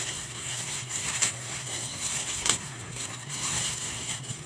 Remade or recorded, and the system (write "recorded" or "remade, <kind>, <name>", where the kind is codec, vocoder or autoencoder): remade, codec, SNAC